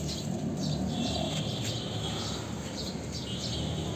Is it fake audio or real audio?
real